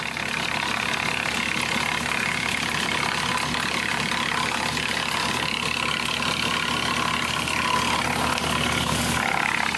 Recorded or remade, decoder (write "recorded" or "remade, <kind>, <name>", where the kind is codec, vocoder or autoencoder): recorded